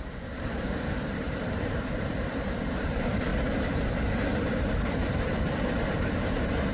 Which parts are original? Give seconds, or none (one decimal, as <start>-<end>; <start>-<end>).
none